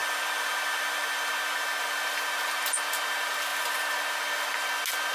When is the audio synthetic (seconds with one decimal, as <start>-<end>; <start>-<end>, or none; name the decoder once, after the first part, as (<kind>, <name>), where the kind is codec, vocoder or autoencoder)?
0.0-1.3 (vocoder, BigVGAN v2)